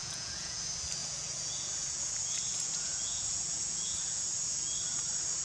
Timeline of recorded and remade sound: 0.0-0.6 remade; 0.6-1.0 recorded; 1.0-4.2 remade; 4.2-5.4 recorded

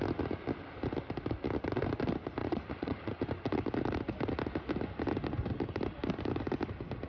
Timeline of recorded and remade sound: 0.0-2.4 recorded; 2.4-3.1 remade; 3.1-7.1 recorded

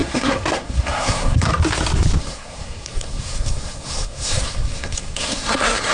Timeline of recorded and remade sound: 0.0-1.5 remade; 1.5-2.2 recorded; 2.2-5.9 remade